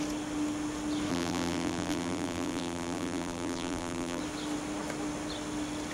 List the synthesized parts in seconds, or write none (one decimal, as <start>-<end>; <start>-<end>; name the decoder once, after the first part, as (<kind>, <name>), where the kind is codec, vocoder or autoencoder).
1.1-4.2 (vocoder, BigVGAN v2)